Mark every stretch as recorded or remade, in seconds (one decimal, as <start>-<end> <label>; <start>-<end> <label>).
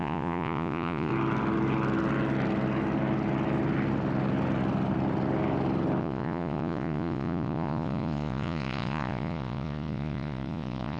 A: 0.0-1.1 remade; 1.1-6.0 recorded; 6.0-11.0 remade